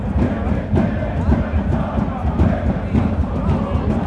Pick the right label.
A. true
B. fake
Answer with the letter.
A